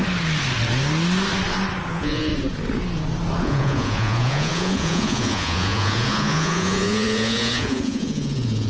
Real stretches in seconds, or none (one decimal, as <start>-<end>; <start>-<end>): 0.0-1.9; 2.3-3.4